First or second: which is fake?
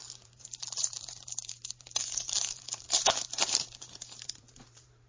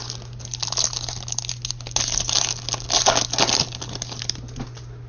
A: first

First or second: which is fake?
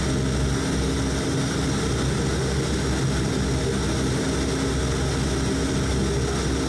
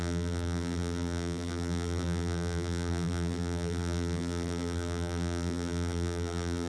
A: second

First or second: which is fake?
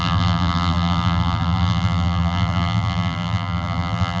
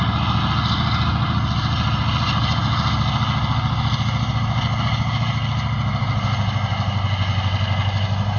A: first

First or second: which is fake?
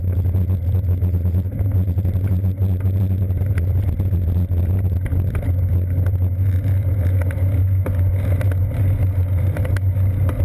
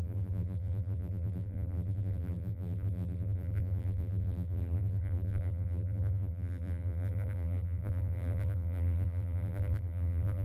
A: second